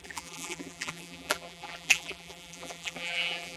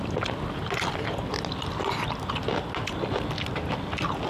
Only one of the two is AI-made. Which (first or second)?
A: first